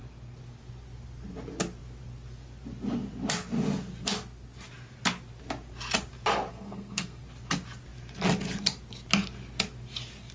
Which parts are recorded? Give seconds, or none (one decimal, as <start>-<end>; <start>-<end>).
0.0-6.5; 7.2-10.3